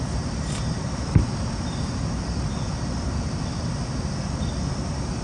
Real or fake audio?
real